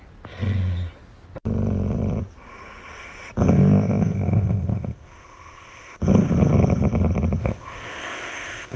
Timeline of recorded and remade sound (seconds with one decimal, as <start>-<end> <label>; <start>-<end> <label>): 0.0-3.5 recorded; 3.5-6.0 remade; 6.0-7.4 recorded; 7.4-8.8 remade